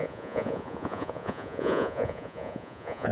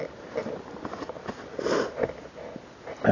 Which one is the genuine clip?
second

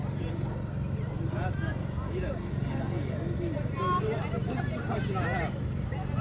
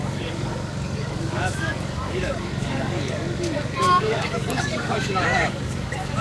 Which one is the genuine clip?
first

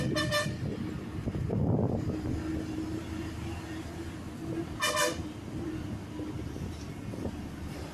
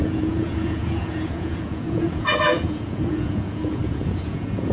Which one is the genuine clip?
first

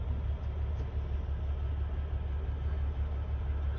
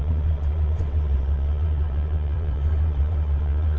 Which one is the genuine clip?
first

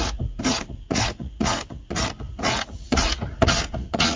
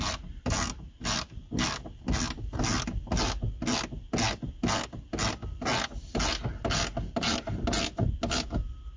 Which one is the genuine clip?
second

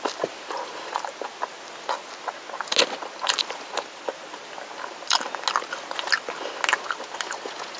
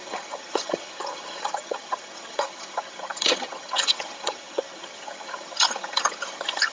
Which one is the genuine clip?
first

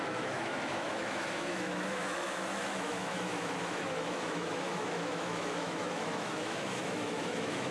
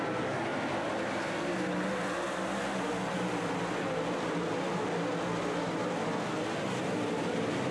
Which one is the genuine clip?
second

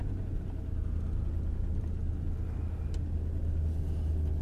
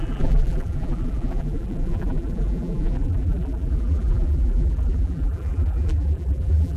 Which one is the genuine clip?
first